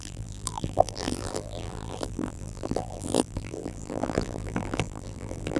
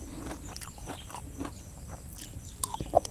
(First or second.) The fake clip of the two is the first